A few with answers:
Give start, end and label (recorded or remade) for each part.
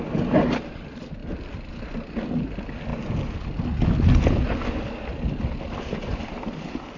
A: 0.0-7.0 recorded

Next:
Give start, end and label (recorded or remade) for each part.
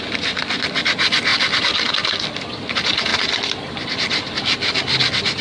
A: 0.0-5.4 recorded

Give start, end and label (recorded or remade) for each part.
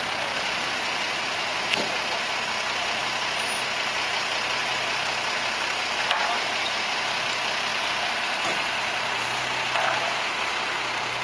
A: 0.0-7.7 recorded; 7.7-9.4 remade; 9.4-11.2 recorded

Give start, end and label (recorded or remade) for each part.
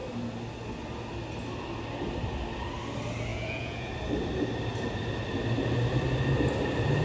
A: 0.0-3.3 recorded; 3.3-3.9 remade; 3.9-7.0 recorded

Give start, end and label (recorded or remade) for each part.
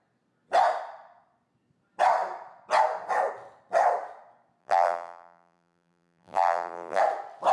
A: 0.0-4.6 recorded; 4.6-7.0 remade; 7.0-7.5 recorded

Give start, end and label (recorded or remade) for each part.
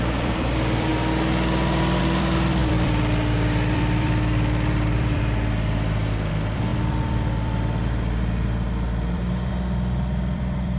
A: 0.0-0.9 remade; 0.9-2.0 recorded; 2.0-10.8 remade